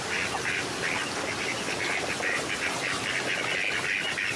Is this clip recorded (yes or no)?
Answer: yes